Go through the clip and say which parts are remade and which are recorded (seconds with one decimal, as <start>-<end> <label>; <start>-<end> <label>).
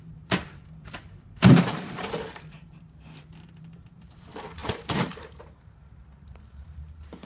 0.0-0.4 remade; 0.4-1.0 recorded; 1.0-7.3 remade